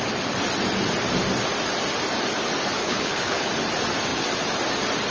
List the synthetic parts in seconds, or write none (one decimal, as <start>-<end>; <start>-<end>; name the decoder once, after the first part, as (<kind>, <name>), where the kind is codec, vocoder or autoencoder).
2.8-3.5 (codec, HILCodec)